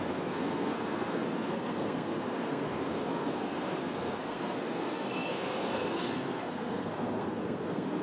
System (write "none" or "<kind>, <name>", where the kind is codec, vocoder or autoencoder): codec, SNAC